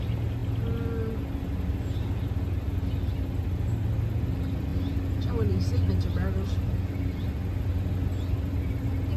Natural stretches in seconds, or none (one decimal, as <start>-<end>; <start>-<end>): 0.0-9.2

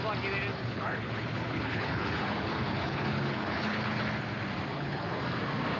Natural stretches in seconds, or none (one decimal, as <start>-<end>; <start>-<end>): 0.0-0.5; 4.0-4.7; 5.2-5.8

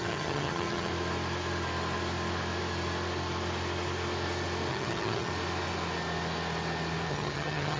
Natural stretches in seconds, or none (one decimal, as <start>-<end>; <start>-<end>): 0.9-4.7; 5.3-7.1

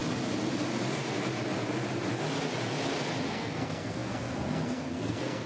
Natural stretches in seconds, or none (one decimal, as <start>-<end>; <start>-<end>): 0.0-3.3